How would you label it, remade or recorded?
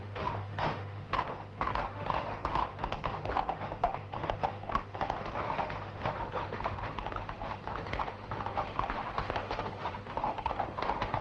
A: remade